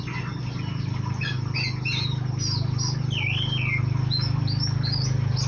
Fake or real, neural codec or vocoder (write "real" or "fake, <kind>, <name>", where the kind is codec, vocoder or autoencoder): real